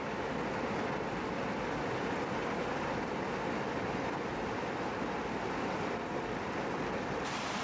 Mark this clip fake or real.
real